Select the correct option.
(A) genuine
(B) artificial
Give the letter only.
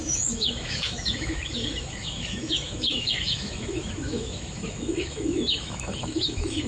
B